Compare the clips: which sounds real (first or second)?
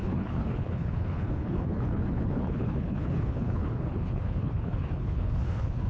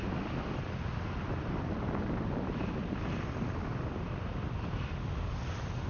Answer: second